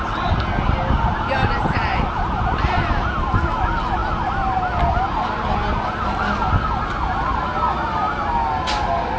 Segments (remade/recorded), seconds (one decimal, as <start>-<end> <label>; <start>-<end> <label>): 0.0-9.2 recorded